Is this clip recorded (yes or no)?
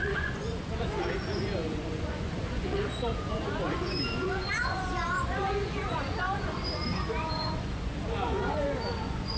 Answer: no